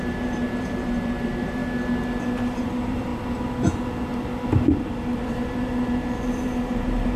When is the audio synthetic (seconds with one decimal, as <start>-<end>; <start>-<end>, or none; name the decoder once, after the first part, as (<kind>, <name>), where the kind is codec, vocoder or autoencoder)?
0.0-1.6 (vocoder, BigVGAN v2); 2.6-3.1; 4.8-7.2